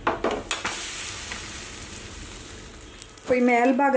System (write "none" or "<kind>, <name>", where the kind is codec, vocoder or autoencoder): none